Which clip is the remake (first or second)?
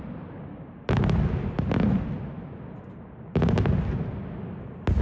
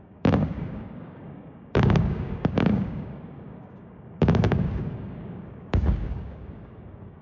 second